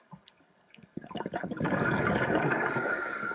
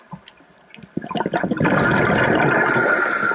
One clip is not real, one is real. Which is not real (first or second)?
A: first